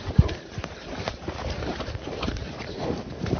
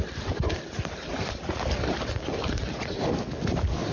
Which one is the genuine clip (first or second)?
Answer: second